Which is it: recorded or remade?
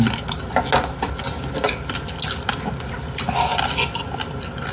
recorded